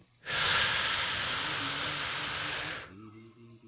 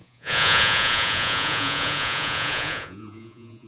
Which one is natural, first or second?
first